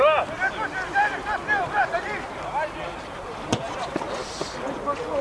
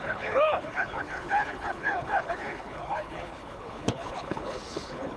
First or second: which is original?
first